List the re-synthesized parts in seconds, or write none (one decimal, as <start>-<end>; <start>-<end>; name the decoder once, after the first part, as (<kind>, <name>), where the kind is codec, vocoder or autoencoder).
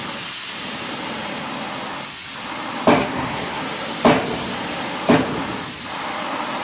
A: 3.0-3.6 (codec, SNAC)